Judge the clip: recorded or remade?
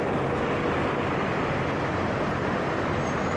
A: recorded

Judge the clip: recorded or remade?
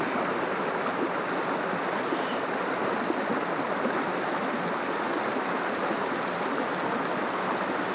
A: recorded